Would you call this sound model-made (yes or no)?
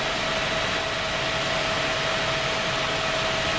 no